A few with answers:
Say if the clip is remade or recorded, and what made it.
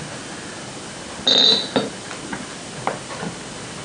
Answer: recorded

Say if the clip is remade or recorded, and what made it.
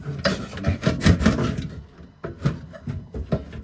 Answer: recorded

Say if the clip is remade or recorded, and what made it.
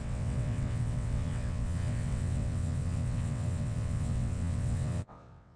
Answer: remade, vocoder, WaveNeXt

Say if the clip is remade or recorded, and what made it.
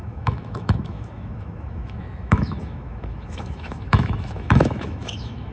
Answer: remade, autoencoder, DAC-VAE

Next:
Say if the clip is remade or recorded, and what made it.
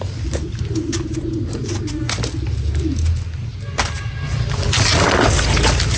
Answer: recorded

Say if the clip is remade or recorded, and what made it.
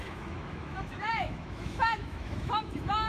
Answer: remade, autoencoder, DAC-VAE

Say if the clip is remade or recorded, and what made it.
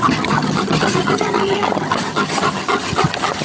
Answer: remade, vocoder, HiFi-GAN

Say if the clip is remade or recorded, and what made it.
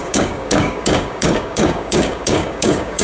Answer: remade, codec, DAC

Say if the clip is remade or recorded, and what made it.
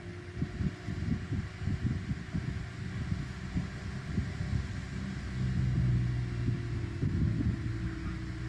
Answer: recorded